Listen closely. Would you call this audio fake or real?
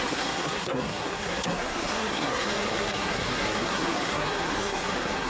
fake